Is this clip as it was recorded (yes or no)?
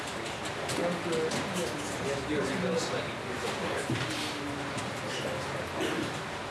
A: yes